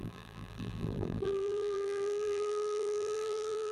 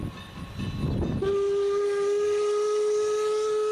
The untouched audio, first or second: second